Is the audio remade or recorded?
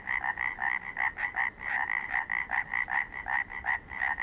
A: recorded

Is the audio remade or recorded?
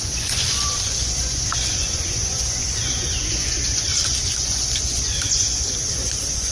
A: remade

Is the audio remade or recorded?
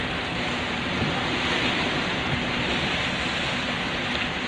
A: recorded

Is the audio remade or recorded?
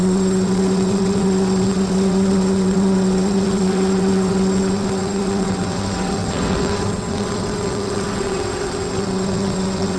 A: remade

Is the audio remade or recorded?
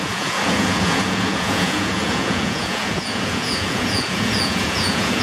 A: remade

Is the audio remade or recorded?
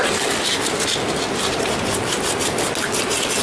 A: recorded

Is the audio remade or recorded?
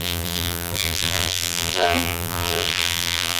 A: remade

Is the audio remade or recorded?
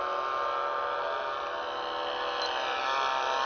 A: recorded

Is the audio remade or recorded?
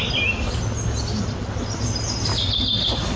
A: recorded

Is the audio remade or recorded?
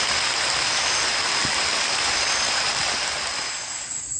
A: recorded